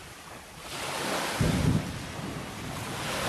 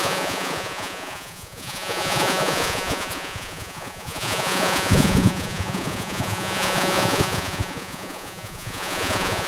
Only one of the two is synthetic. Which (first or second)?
second